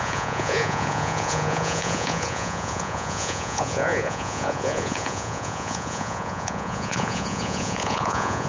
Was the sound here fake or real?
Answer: fake